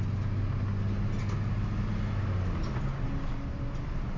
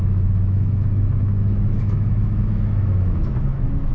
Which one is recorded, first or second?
first